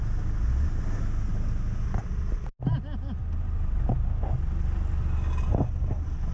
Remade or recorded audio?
recorded